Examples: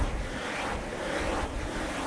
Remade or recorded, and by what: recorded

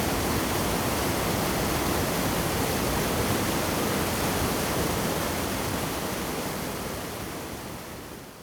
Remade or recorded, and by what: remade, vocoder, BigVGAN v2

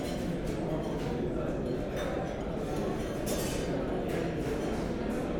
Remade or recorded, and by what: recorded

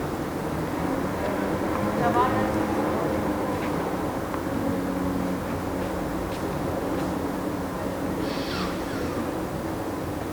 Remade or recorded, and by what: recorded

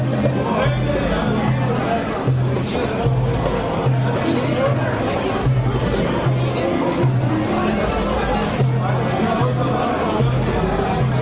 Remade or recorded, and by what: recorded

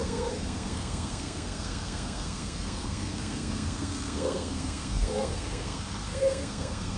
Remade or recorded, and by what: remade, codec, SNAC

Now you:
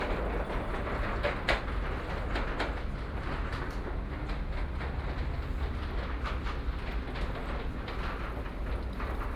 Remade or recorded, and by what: recorded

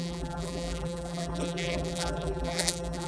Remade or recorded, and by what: remade, vocoder, BigVGAN v2